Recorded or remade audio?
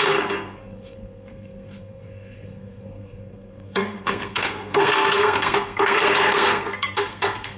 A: remade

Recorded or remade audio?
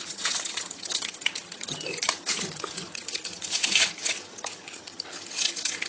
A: remade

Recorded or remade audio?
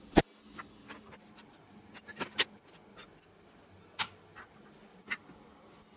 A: recorded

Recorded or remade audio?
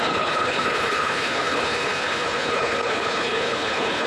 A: remade